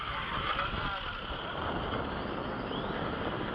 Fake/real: real